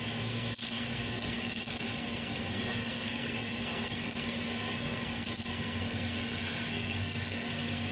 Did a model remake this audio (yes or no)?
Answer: yes